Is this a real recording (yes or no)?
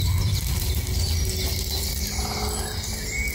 yes